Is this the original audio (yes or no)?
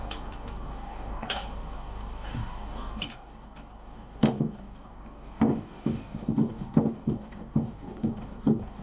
no